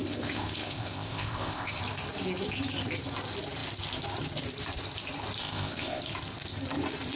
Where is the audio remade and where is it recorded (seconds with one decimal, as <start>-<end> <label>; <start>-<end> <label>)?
0.0-1.8 remade; 1.8-5.4 recorded; 5.4-6.0 remade; 6.0-7.2 recorded